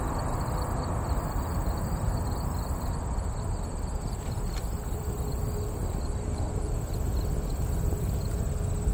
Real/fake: real